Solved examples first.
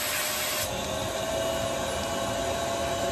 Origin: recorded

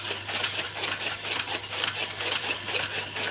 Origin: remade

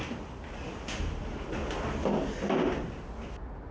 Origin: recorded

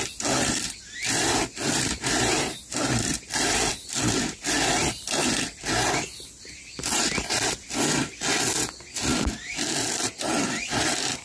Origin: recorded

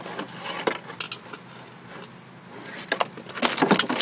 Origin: recorded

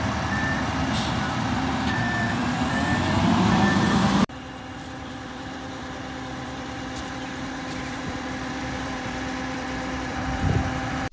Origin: remade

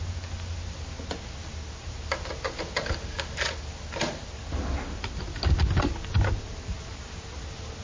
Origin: recorded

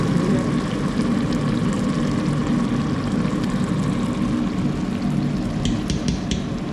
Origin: recorded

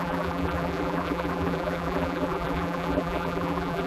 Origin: remade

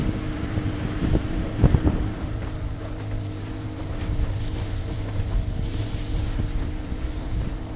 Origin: remade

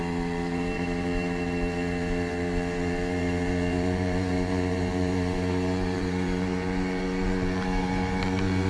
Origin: remade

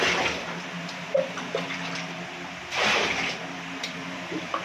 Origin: recorded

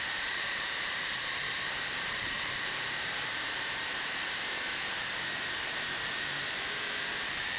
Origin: remade